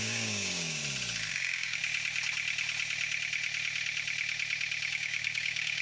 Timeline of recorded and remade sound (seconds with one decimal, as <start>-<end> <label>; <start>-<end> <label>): 0.0-0.8 remade; 0.8-1.3 recorded; 1.3-1.8 remade; 1.8-4.9 recorded; 4.9-5.8 remade